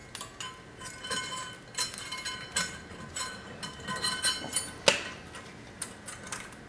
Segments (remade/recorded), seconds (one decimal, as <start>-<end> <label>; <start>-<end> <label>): 0.0-6.7 recorded